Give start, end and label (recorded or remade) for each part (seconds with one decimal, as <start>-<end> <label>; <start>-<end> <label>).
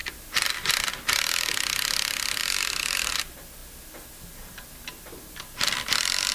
0.0-0.8 remade; 0.8-2.4 recorded; 2.4-3.1 remade; 3.1-6.3 recorded